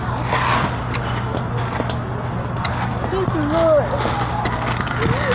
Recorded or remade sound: recorded